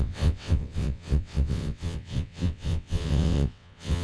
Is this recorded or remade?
remade